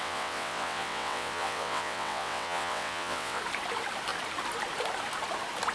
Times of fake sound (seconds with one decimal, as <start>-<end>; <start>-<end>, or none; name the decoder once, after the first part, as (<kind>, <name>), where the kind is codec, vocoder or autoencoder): 0.0-3.4 (vocoder, WaveNeXt)

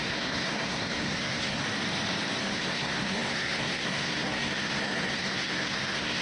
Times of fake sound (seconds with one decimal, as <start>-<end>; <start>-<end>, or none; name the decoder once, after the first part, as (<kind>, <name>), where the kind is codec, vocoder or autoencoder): 0.0-1.6 (codec, SNAC); 2.4-6.2